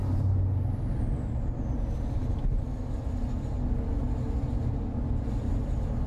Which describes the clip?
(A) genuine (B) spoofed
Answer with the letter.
A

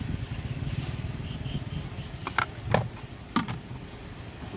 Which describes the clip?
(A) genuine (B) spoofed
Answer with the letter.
A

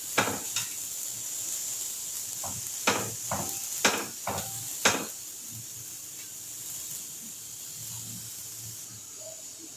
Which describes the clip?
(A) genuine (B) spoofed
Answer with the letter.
A